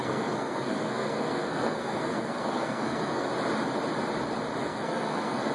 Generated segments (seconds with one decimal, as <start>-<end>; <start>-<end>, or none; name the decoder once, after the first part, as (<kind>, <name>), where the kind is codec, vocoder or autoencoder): 0.0-3.3 (codec, SNAC); 4.6-5.5

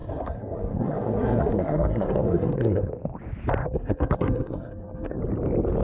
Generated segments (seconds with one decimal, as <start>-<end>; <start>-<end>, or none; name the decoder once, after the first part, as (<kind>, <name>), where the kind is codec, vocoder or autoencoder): 0.0-2.9 (codec, SNAC); 3.6-5.2

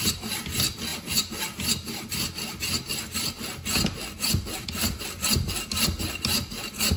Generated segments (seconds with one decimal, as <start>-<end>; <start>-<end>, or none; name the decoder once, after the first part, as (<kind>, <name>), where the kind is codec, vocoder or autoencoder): none

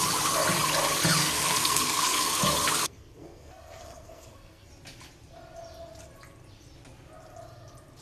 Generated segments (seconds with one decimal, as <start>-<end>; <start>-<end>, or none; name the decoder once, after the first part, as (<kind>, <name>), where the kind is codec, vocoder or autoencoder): 1.2-2.4 (codec, SNAC); 2.8-4.7